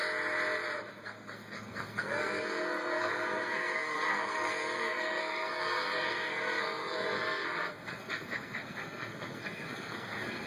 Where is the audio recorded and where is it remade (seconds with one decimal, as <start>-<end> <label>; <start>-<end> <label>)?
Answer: 0.0-0.9 recorded; 0.9-10.5 remade